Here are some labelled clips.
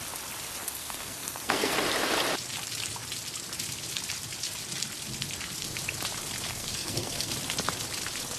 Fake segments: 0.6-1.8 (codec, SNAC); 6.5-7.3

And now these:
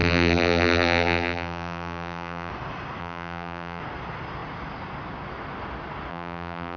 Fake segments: 0.0-2.5 (vocoder, BigVGAN v2); 3.0-3.8; 6.1-6.8

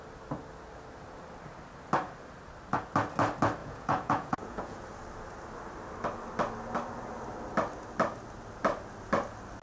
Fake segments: 3.6-4.8 (vocoder, Vocos)

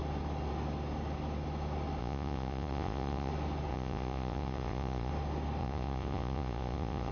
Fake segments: 2.0-3.3 (vocoder, Vocos); 3.7-5.1; 5.6-7.1

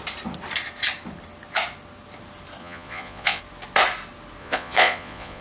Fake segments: 2.6-3.4 (vocoder, Vocos); 4.4-5.4

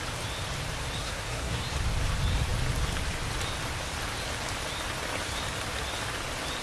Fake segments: 1.0-1.6 (codec, SNAC)